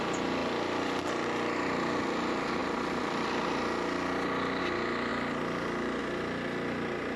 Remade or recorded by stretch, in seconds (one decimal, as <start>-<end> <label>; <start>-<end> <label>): 0.0-0.4 recorded; 0.4-1.0 remade; 1.0-2.6 recorded; 2.6-4.6 remade; 4.6-5.1 recorded; 5.1-6.0 remade; 6.0-7.2 recorded